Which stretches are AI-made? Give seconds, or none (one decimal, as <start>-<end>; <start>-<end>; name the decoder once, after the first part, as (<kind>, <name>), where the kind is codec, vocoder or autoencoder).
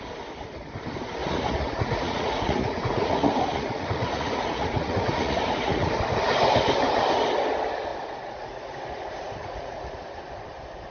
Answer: 1.2-5.9 (vocoder, Vocos); 7.9-8.6; 9.4-10.0